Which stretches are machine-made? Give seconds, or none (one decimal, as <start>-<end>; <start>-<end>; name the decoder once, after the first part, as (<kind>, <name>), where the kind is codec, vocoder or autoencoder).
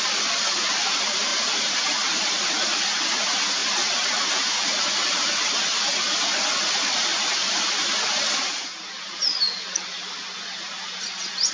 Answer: 1.3-2.5 (vocoder, BigVGAN v2); 7.1-7.9